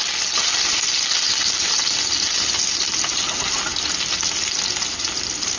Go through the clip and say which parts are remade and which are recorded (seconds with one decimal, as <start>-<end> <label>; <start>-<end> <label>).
0.0-5.6 recorded